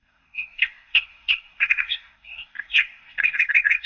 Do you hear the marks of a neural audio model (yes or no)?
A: yes